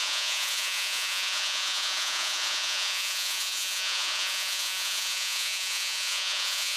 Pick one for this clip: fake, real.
fake